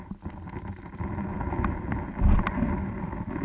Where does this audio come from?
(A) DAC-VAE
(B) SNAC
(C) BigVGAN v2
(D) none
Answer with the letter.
D